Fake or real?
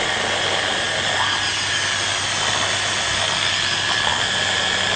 real